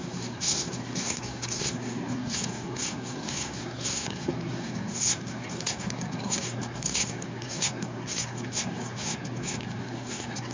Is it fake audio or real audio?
fake